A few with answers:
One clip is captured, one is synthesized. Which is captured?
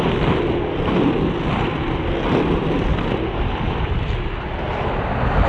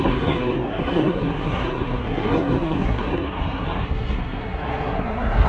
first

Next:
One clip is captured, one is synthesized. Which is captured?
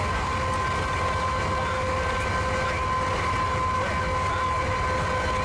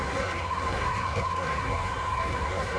first